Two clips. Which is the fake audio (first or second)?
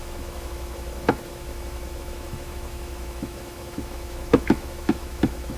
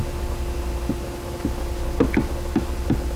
first